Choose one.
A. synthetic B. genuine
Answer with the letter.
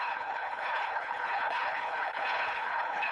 A